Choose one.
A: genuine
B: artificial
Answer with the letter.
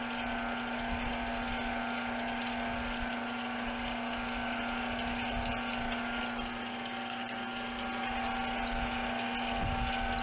A